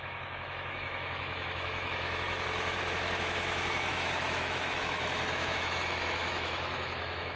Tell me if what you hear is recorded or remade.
remade